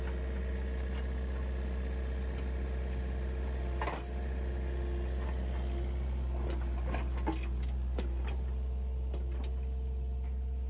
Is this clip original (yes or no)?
yes